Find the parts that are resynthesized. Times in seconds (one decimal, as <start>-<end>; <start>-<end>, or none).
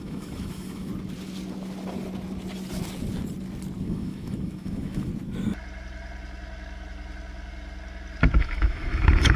0.0-0.9; 3.8-5.1; 8.4-9.4